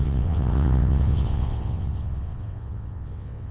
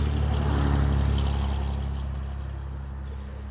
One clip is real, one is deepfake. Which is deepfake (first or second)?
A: first